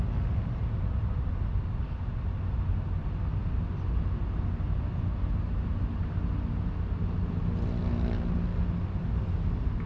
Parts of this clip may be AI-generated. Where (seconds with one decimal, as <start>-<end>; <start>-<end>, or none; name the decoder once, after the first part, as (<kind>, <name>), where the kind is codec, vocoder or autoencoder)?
none